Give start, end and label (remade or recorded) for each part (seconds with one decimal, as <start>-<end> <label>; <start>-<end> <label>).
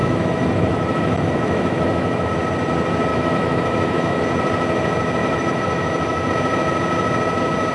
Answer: 0.0-2.3 remade; 2.3-3.1 recorded; 3.1-4.2 remade; 4.2-5.2 recorded; 5.2-6.3 remade; 6.3-7.7 recorded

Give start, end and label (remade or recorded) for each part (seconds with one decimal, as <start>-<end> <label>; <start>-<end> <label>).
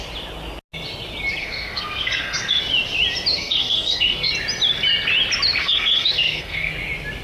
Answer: 0.0-1.4 recorded; 1.4-2.6 remade; 2.6-3.3 recorded; 3.3-4.3 remade; 4.3-5.6 recorded; 5.6-6.7 remade; 6.7-7.2 recorded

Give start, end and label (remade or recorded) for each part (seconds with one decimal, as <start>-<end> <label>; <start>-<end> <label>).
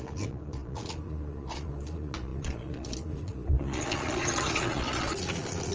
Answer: 0.0-5.7 remade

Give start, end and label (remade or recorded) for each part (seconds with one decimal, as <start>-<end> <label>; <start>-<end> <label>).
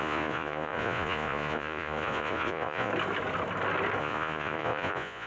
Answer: 0.0-2.9 remade; 2.9-4.0 recorded; 4.0-5.3 remade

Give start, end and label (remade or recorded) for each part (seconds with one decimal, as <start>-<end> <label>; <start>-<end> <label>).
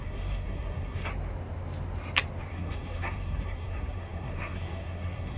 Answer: 0.0-1.1 remade; 1.1-2.5 recorded; 2.5-5.4 remade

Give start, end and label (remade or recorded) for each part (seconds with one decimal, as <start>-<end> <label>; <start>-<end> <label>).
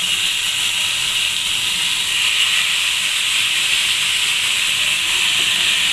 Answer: 0.0-5.9 recorded